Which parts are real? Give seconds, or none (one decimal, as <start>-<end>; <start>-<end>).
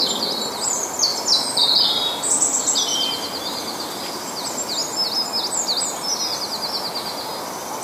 0.0-1.1; 2.3-2.9; 4.3-7.8